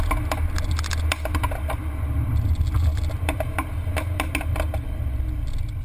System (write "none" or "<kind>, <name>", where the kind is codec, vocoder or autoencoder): none